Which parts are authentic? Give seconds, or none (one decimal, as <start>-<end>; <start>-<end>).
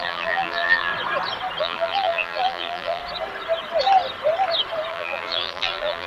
0.9-1.6; 3.0-4.9